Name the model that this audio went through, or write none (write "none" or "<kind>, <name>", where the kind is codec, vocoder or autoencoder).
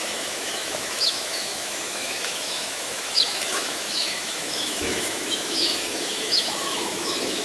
autoencoder, DAC-VAE